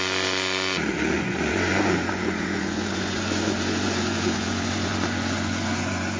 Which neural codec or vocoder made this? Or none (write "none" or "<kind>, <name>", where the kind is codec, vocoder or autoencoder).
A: vocoder, Vocos